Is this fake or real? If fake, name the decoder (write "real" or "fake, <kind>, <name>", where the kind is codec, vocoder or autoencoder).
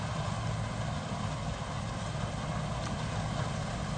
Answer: real